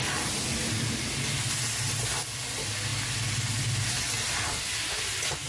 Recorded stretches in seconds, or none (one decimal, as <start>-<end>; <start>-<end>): 0.0-5.5